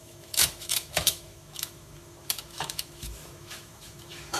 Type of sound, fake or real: fake